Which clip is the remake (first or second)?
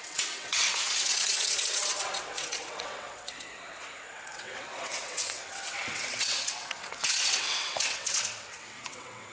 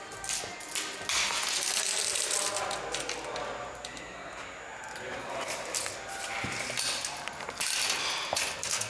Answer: first